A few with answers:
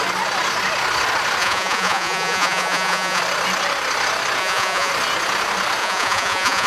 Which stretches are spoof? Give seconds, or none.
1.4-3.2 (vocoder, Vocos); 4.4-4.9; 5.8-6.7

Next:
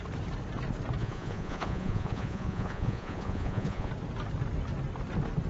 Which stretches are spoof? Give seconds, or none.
1.0-3.9 (vocoder, Vocos)

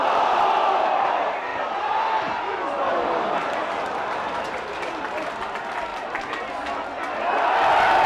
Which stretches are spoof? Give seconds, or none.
1.5-4.9 (vocoder, BigVGAN v2); 5.9-6.4

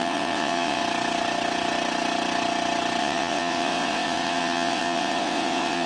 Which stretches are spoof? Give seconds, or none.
0.0-0.8 (vocoder, WaveNeXt); 3.0-5.9

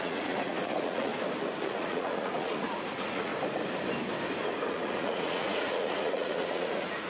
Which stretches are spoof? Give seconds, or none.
0.0-1.1 (vocoder, Vocos); 1.6-3.3; 4.7-7.1

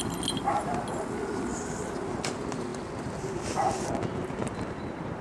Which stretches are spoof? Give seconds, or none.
4.1-5.2 (vocoder, BigVGAN v2)

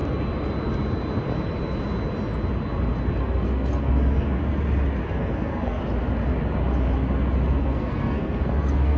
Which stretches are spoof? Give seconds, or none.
3.2-4.4 (codec, SNAC); 5.1-5.8; 7.6-9.0

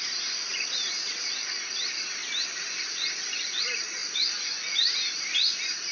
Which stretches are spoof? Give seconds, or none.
0.0-4.0 (vocoder, BigVGAN v2)